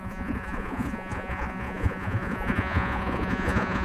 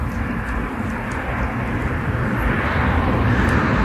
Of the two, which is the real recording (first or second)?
second